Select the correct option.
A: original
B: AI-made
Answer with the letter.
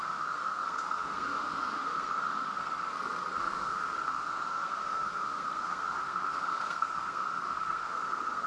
B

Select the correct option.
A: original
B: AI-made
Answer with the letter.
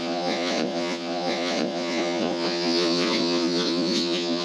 B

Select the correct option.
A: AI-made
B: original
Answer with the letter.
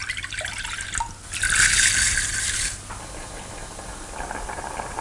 B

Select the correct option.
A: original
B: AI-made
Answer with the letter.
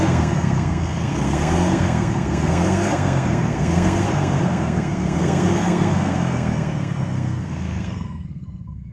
B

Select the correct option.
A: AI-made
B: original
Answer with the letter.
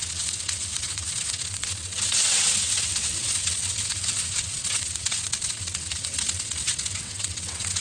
A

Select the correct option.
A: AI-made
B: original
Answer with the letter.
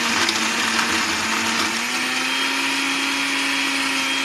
B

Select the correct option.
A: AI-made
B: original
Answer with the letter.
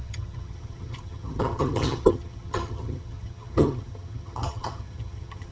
A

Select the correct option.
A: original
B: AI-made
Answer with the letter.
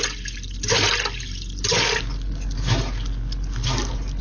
A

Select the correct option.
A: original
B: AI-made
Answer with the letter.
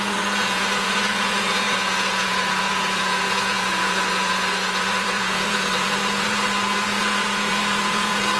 B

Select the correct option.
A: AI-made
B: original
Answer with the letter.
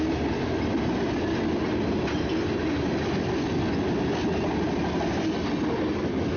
B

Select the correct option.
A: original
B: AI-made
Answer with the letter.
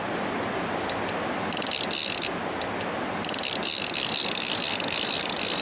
A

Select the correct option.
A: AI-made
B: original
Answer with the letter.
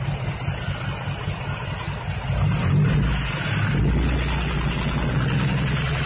B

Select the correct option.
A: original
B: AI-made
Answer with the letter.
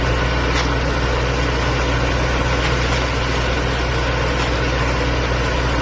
A